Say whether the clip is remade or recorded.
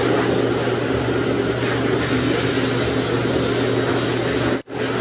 recorded